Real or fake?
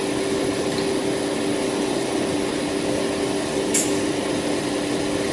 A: real